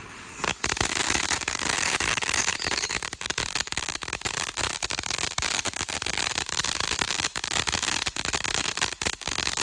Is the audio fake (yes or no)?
yes